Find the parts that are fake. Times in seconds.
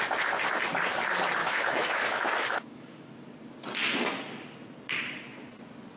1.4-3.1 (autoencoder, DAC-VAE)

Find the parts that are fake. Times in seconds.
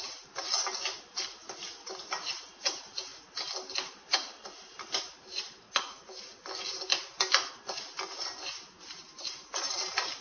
none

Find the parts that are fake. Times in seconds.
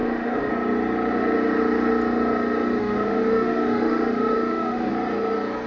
0.0-0.5 (autoencoder, DAC-VAE); 2.8-4.9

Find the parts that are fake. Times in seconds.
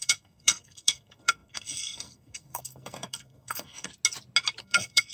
0.0-3.9 (codec, SNAC); 4.6-5.1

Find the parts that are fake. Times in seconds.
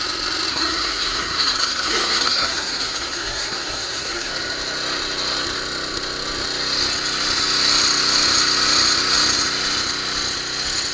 0.5-4.3 (codec, SNAC)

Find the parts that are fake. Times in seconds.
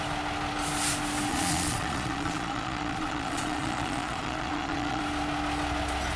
1.3-5.0 (vocoder, Vocos)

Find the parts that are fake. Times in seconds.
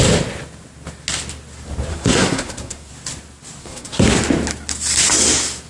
1.9-2.9 (codec, SNAC); 3.6-4.2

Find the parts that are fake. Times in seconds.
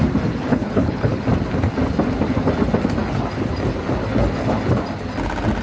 0.5-1.2 (codec, HILCodec)